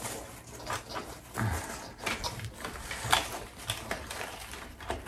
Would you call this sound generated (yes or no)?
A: no